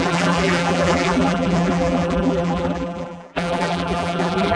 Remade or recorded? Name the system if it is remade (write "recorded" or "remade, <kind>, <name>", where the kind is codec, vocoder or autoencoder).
remade, vocoder, BigVGAN v2